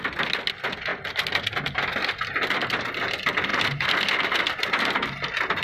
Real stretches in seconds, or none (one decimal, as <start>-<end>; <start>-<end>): 0.0-5.6